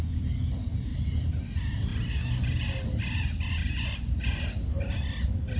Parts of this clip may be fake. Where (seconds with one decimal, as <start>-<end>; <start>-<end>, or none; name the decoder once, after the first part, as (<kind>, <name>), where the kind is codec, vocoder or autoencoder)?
none